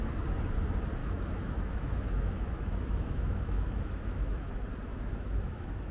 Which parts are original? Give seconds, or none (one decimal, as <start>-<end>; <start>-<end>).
0.0-1.0; 4.5-4.9